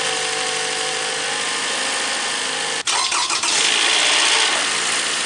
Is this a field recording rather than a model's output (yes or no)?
yes